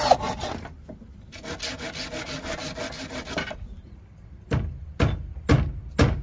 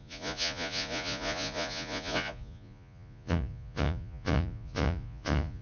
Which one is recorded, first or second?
first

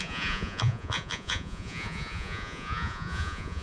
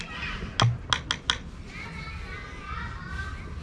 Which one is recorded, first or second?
second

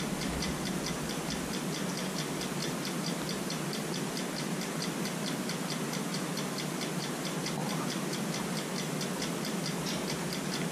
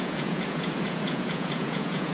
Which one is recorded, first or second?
first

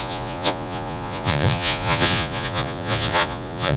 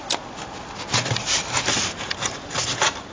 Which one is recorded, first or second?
second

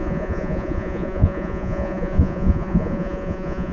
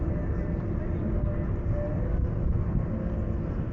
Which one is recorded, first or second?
second